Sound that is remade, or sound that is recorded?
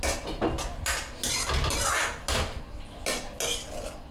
recorded